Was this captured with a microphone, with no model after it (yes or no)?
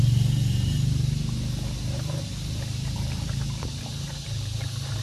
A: yes